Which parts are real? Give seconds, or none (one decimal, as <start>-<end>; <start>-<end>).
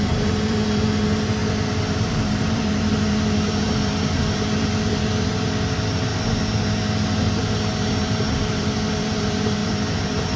6.1-7.7